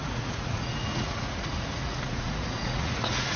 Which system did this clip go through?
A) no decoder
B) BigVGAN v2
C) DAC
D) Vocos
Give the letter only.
D